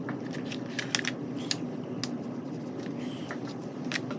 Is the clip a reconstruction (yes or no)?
no